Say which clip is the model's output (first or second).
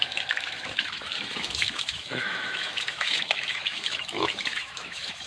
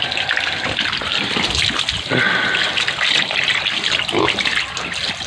first